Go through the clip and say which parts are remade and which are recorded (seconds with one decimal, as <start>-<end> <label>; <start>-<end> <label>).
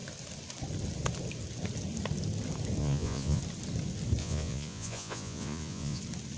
0.0-2.8 recorded; 2.8-3.4 remade; 3.4-4.2 recorded; 4.2-6.0 remade; 6.0-6.4 recorded